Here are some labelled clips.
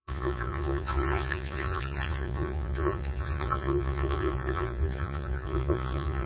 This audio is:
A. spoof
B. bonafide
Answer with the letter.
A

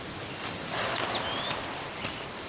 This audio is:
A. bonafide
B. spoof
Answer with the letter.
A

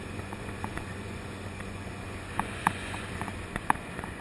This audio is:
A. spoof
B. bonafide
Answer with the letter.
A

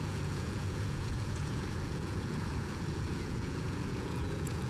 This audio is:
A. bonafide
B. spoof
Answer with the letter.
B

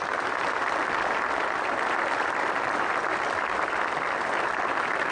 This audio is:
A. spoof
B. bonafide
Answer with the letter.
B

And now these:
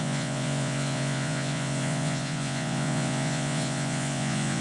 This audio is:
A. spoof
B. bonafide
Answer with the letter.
A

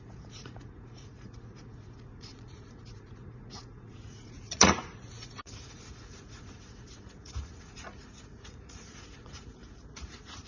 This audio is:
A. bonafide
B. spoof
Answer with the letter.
B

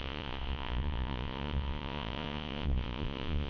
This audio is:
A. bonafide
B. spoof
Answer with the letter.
B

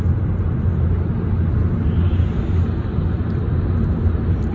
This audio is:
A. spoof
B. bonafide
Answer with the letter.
B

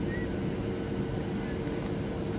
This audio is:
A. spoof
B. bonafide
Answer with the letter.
B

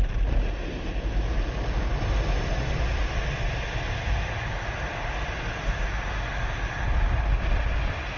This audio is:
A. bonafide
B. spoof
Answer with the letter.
A